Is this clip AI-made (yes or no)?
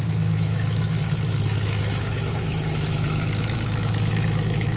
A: yes